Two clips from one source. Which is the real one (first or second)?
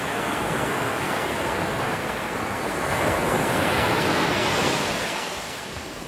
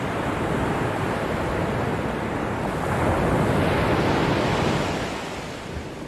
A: second